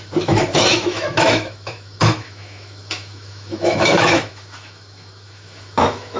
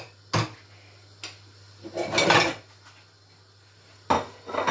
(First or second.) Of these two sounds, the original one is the second